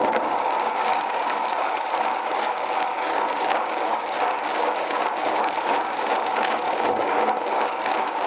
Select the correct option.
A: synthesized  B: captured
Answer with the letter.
A